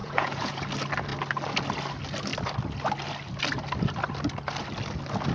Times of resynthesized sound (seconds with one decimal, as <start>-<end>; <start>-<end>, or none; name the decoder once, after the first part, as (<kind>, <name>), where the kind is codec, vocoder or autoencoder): 0.0-0.6 (vocoder, Vocos)